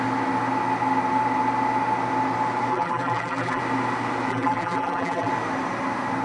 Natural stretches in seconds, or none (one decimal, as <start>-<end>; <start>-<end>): 0.0-2.7; 3.6-4.3; 5.3-6.2

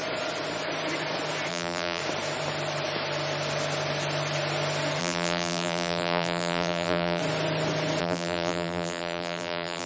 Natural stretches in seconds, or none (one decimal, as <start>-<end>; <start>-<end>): 0.0-1.5; 2.0-5.0; 7.2-8.0

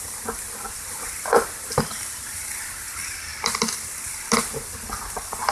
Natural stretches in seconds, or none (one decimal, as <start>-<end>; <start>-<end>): 0.0-5.5

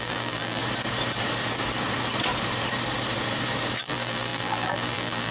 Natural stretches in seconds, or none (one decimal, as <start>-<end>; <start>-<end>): 0.6-3.8

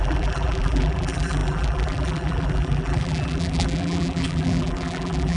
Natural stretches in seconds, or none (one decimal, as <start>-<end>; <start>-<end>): none